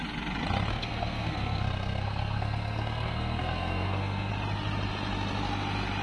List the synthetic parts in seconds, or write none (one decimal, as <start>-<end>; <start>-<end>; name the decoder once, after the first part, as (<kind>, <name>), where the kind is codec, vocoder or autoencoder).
0.7-4.3 (codec, SNAC)